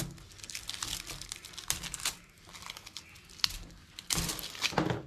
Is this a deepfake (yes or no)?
no